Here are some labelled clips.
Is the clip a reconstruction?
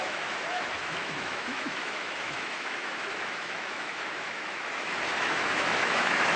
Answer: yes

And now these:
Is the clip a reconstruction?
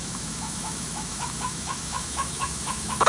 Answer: yes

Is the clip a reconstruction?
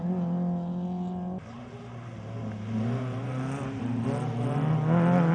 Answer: no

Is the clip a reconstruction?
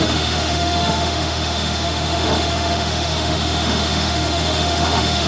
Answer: yes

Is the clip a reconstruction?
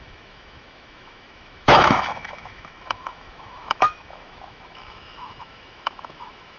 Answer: yes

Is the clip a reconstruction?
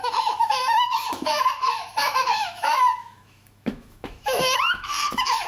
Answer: yes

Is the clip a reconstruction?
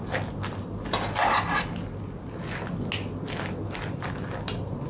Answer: no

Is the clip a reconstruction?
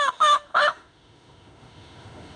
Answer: yes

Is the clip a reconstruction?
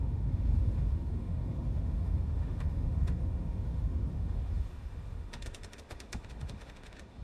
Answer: yes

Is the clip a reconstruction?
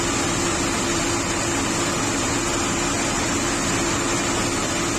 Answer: no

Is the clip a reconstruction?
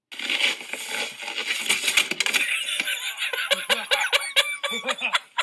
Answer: no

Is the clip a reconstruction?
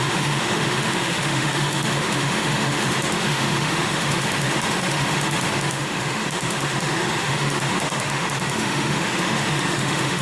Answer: yes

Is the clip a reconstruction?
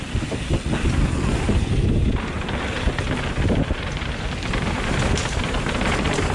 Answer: no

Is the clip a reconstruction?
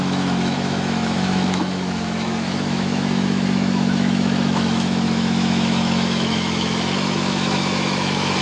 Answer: yes